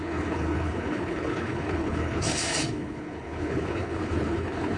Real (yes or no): no